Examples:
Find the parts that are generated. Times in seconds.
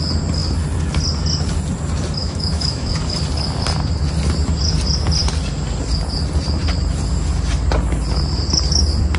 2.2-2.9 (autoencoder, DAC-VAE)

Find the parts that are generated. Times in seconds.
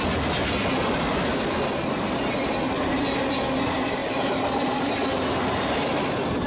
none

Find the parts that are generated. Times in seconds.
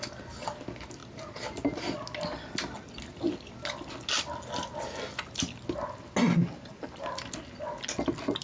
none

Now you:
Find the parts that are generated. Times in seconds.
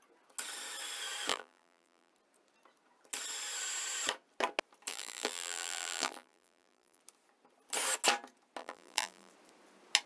1.3-2.1 (vocoder, BigVGAN v2); 4.9-7.0; 8.6-9.3